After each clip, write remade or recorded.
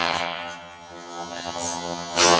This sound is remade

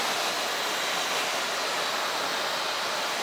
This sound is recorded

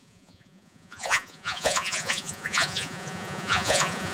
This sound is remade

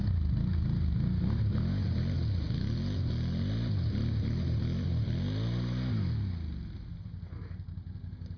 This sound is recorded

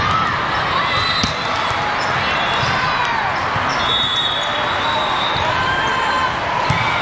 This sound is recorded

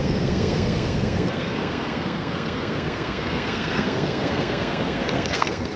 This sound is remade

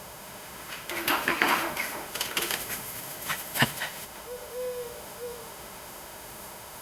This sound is remade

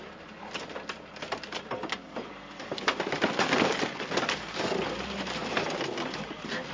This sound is recorded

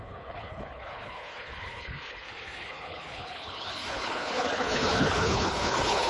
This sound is remade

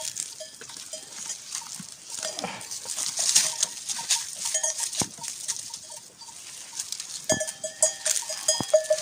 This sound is recorded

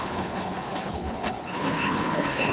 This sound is remade